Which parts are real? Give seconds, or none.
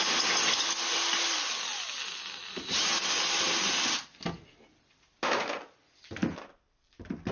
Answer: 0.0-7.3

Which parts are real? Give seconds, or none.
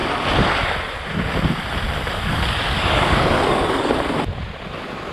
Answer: 0.0-2.3; 3.9-5.1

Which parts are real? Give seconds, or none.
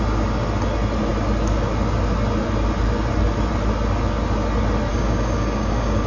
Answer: 0.0-4.9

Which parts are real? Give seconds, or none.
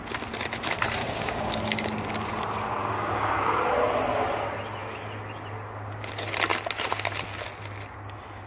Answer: 0.0-1.0; 1.6-2.8; 3.7-8.5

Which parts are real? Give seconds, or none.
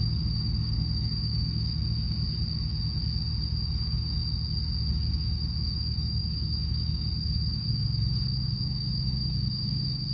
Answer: 1.8-3.7; 4.2-4.9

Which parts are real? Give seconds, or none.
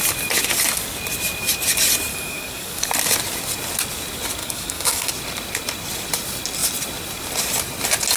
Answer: 0.0-2.1; 2.9-4.4; 5.1-8.2